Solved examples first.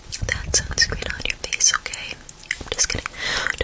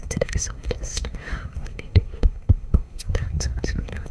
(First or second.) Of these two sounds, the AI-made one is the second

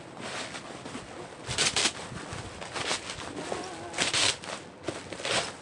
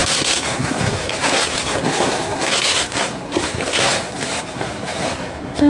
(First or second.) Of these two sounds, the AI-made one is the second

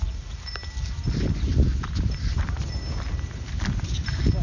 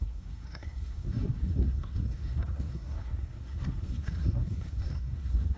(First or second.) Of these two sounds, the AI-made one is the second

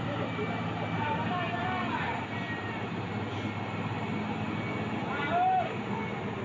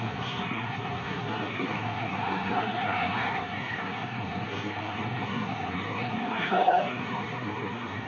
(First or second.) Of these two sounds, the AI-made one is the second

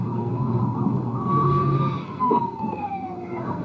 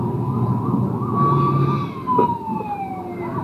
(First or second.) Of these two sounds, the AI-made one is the first